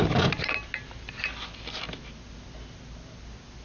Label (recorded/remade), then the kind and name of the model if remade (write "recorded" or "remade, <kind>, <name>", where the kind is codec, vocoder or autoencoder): recorded